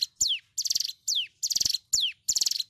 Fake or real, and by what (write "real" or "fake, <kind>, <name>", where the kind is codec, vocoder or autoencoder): real